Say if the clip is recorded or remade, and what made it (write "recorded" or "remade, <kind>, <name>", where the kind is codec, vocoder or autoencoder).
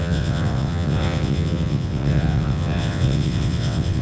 remade, vocoder, WaveNeXt